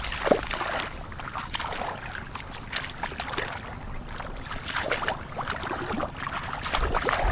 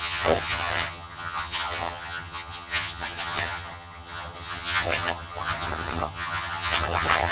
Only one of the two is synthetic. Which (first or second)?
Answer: second